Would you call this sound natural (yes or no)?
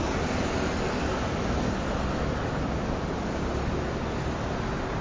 yes